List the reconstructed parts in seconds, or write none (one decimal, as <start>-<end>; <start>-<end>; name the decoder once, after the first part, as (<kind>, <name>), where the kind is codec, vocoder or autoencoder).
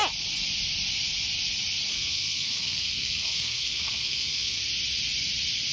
1.9-4.6 (codec, SNAC)